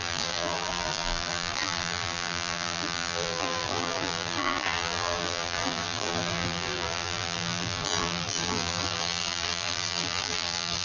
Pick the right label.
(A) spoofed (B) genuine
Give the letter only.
A